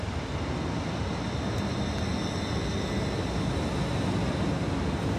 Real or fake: real